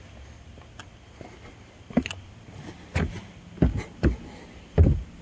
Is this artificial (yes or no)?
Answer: no